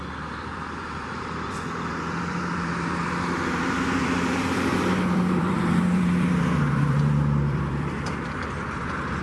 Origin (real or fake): fake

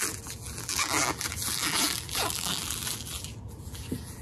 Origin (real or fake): fake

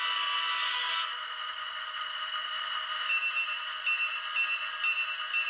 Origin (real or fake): real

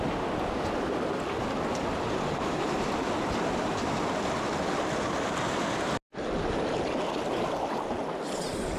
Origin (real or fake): real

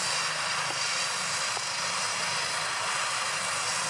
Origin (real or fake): real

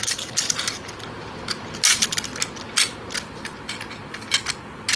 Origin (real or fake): real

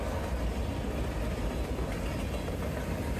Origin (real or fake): real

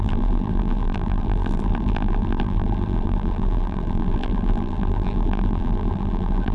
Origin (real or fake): fake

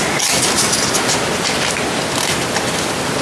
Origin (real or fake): real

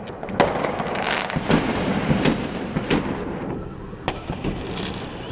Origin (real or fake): real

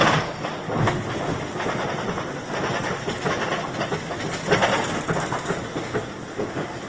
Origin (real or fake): real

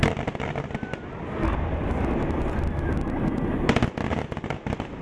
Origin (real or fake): real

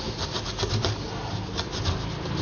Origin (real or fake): fake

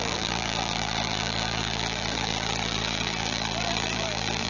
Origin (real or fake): fake